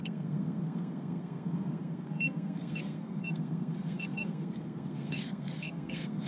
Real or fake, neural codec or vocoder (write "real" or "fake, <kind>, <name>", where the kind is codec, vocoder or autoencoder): fake, codec, SNAC